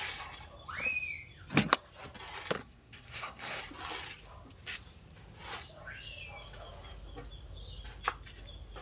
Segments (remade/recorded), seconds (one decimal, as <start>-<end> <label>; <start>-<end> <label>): 0.0-2.6 recorded; 2.6-3.6 remade; 3.6-8.8 recorded